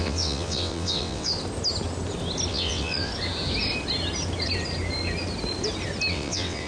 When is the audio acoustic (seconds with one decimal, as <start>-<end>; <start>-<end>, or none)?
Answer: 1.3-2.5; 3.1-6.1

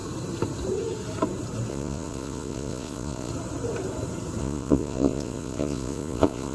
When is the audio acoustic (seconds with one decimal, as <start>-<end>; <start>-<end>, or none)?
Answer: 0.0-1.7; 3.3-4.4